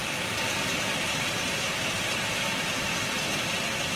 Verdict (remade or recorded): recorded